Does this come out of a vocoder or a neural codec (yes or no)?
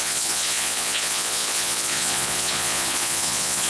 yes